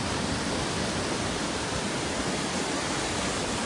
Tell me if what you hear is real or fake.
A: real